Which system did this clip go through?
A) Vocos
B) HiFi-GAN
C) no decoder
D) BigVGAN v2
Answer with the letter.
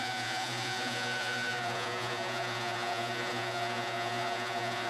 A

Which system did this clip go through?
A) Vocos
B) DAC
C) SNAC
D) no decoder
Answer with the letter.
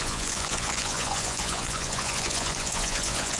A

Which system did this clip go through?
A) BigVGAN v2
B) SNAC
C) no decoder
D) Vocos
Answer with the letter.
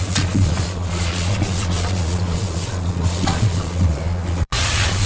D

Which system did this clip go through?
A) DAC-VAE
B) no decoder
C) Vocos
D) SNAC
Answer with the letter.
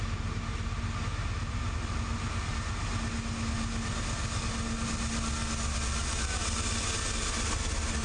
B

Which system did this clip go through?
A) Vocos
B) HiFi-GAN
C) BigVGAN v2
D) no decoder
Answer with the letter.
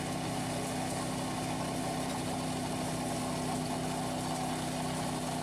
D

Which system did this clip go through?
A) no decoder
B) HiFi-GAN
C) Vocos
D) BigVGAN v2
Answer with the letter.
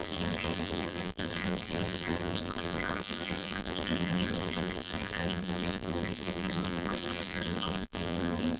D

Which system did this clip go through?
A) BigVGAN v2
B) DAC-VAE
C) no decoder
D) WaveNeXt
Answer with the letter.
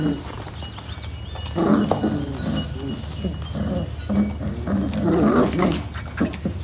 C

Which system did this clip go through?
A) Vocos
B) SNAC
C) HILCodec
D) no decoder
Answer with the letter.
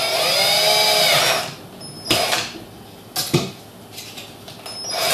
D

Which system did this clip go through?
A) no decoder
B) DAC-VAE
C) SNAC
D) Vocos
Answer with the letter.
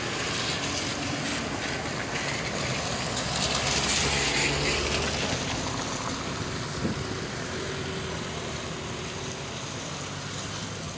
A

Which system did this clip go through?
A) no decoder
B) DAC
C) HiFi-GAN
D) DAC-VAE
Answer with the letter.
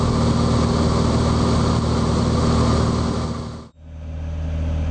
A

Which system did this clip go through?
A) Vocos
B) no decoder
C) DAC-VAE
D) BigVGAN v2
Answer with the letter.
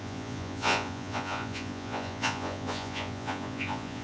A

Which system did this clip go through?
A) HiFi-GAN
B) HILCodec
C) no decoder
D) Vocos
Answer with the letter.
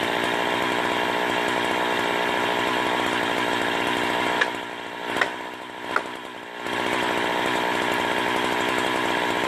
C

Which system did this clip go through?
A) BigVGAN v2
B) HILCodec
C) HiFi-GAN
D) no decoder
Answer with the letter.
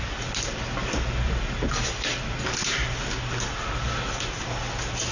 D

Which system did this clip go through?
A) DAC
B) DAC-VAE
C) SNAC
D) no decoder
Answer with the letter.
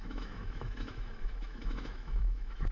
B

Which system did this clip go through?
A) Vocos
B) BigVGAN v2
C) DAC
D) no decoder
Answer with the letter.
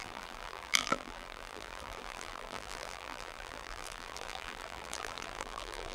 B